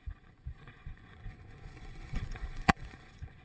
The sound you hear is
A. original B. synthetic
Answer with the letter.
B